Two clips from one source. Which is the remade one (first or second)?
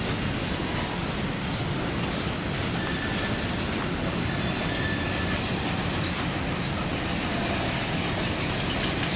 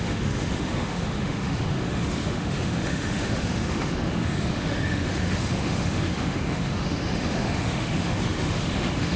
second